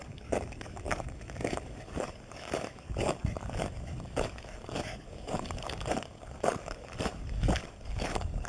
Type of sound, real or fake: fake